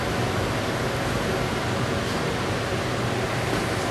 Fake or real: real